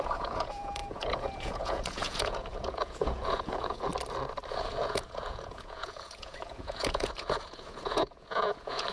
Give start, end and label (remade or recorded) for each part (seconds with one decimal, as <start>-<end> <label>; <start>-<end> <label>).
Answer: 0.0-3.9 remade; 3.9-4.5 recorded; 4.5-8.9 remade